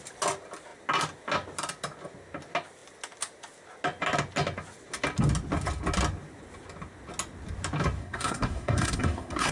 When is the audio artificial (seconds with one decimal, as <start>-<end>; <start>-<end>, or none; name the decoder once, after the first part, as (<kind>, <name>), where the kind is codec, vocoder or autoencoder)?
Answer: 8.0-9.5 (codec, SNAC)